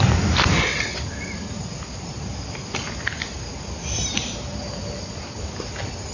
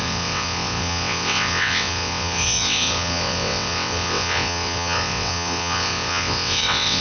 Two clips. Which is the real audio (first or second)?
first